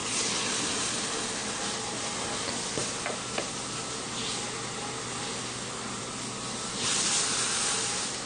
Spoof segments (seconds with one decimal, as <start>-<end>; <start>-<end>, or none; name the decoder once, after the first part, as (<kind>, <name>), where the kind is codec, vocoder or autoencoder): none